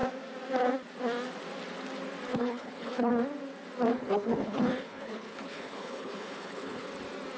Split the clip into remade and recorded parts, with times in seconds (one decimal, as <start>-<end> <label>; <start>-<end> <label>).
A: 0.0-2.3 recorded; 2.3-3.1 remade; 3.1-3.9 recorded; 3.9-6.9 remade; 6.9-7.4 recorded

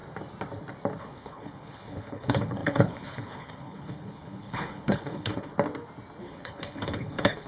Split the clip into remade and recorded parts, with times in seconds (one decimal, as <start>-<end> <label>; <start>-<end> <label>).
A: 0.0-1.0 recorded; 1.0-5.5 remade; 5.5-6.2 recorded; 6.2-7.5 remade